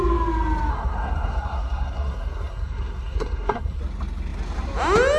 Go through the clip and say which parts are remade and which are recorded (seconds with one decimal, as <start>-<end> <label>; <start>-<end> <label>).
0.0-0.7 recorded; 0.7-3.8 remade; 3.8-5.2 recorded